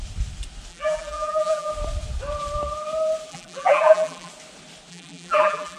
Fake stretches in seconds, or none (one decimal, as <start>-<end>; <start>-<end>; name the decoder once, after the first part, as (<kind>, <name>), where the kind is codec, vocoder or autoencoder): 0.7-1.7 (vocoder, BigVGAN v2); 3.3-4.3; 4.9-5.8